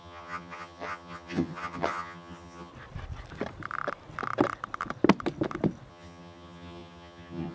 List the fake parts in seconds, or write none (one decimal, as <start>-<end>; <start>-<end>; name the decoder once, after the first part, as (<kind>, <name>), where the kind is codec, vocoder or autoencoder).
0.0-2.7 (vocoder, HiFi-GAN); 5.9-7.5